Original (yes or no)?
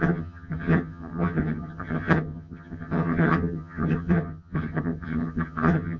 no